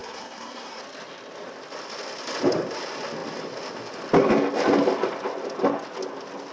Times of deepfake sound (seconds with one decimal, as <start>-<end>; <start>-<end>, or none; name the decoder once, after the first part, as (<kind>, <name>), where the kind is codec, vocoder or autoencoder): 0.0-0.8 (codec, SNAC)

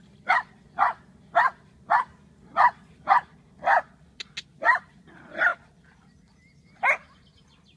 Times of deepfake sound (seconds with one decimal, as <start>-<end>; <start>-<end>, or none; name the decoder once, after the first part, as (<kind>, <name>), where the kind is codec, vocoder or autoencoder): none